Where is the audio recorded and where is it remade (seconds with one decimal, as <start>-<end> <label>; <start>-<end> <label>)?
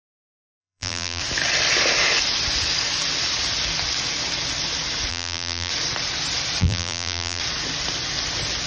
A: 0.0-0.6 recorded; 0.6-1.2 remade; 1.2-5.1 recorded; 5.1-5.7 remade; 5.7-6.6 recorded; 6.6-7.4 remade; 7.4-8.7 recorded